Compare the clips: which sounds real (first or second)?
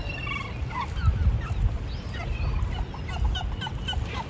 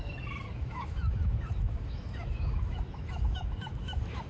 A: first